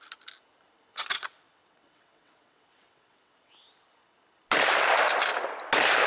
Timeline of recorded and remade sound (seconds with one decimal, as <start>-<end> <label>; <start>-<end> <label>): 0.0-0.9 recorded; 0.9-3.5 remade; 3.5-6.1 recorded